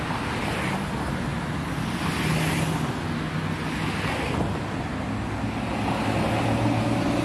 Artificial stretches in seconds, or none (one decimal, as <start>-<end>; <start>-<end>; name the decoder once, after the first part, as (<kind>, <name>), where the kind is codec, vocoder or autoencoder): none